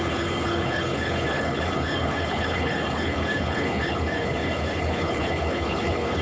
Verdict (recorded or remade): remade